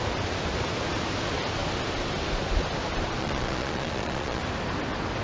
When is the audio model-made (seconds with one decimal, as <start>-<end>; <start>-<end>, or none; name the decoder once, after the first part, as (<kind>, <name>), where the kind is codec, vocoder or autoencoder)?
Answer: 3.2-4.4 (vocoder, Vocos)